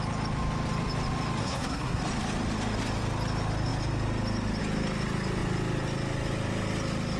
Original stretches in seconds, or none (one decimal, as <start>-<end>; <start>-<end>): 0.0-1.4; 2.0-7.2